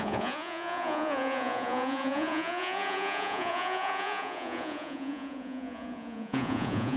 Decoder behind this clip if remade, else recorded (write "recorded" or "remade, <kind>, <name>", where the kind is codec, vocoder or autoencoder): remade, vocoder, Vocos